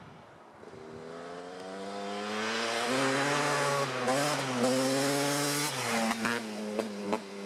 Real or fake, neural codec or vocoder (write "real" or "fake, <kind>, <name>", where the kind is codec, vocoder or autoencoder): real